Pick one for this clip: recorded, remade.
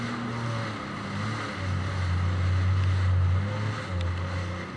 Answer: recorded